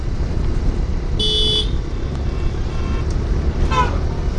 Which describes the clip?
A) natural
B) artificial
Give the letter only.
A